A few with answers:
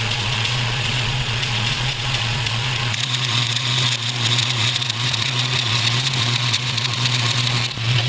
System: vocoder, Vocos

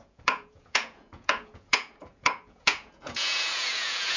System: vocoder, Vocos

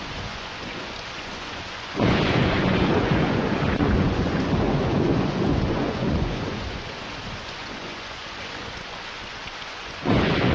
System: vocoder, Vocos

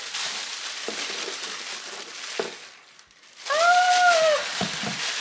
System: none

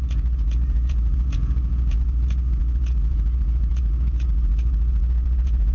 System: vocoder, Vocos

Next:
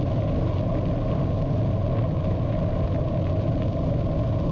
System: none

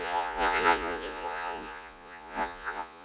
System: vocoder, Vocos